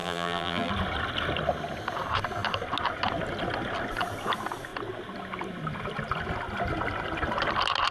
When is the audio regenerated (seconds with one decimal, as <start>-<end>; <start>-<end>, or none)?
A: 0.0-0.7